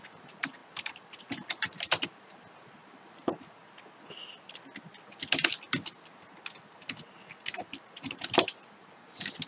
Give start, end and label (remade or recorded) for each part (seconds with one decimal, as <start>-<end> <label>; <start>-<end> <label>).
0.0-3.6 remade; 3.6-7.8 recorded; 7.8-9.5 remade